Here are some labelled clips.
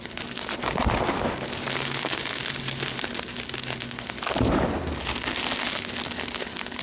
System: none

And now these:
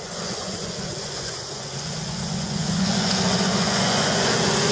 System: vocoder, Vocos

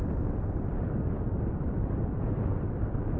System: none